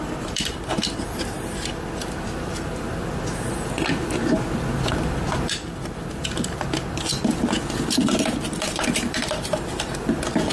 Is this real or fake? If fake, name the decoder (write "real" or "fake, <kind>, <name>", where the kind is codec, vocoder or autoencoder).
fake, vocoder, BigVGAN v2